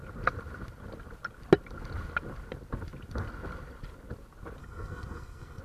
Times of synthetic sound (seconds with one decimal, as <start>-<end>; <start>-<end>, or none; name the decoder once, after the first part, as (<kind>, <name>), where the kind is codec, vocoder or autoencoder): 4.6-5.6 (codec, SNAC)